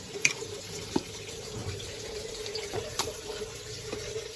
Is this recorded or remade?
remade